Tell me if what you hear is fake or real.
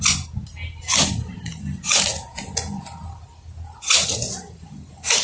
real